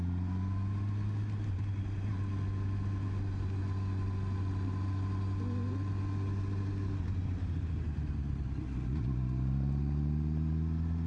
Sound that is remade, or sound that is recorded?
recorded